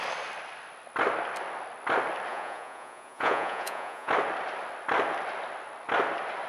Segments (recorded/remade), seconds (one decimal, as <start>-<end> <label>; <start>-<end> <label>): 0.0-2.3 recorded; 2.3-4.1 remade; 4.1-6.5 recorded